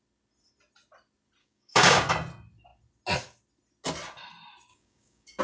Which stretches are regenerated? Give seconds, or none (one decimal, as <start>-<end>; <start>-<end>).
1.4-2.1; 4.7-5.4